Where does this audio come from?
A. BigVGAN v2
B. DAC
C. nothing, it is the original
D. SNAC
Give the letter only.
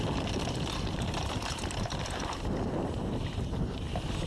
A